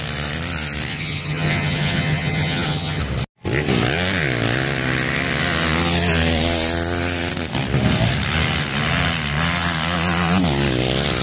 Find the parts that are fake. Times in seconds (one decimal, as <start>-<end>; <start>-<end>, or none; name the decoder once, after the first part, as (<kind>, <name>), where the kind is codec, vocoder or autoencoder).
0.9-3.0 (vocoder, HiFi-GAN)